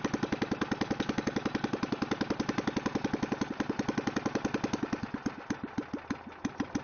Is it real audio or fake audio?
real